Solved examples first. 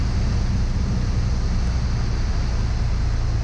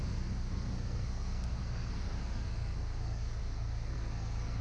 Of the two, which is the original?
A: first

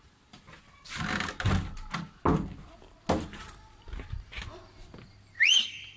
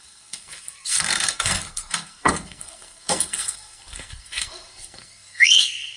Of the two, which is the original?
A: first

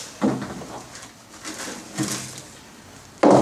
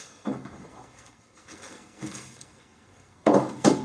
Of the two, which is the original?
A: first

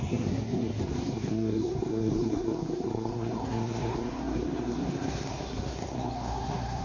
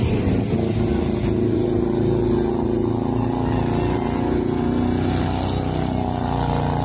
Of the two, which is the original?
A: second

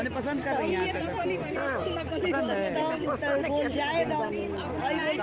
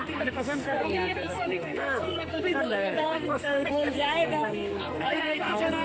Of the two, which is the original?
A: first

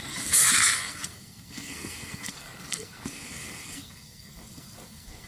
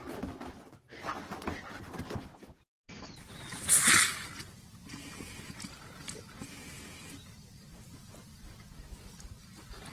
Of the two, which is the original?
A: second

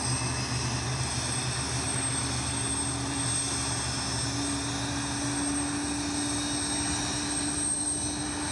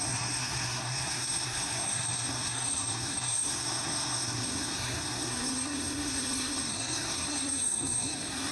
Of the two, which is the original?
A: first